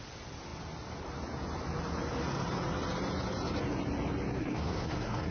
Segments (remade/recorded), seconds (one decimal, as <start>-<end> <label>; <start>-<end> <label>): 0.0-4.4 recorded; 4.4-5.3 remade